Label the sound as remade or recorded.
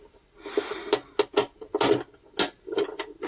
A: recorded